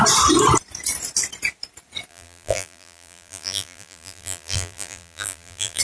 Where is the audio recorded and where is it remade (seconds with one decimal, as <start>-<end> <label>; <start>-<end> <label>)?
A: 0.0-2.1 recorded; 2.1-5.8 remade